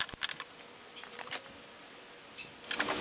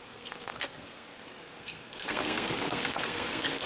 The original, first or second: first